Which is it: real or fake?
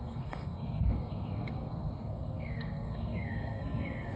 fake